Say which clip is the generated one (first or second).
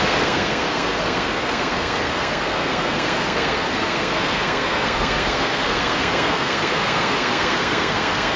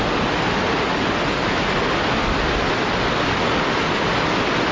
first